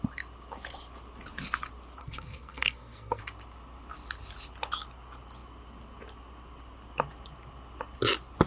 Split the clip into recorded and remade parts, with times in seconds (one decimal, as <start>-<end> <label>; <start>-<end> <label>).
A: 0.0-2.0 recorded; 2.0-3.2 remade; 3.2-8.5 recorded